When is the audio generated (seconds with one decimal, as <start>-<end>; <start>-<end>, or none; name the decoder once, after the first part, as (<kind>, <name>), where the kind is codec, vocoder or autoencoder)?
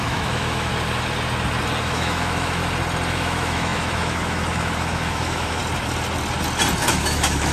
0.0-0.7 (autoencoder, DAC-VAE); 1.8-2.6; 3.1-5.6; 6.8-7.5